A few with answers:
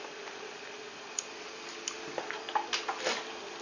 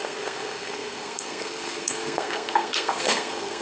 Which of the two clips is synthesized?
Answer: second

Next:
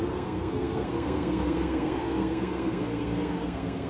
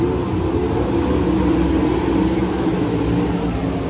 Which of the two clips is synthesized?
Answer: first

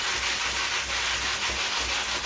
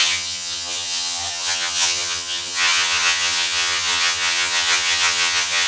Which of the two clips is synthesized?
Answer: second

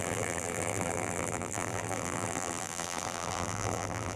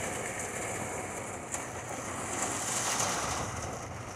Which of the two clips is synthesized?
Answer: first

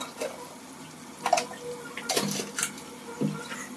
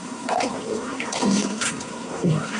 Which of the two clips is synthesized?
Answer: second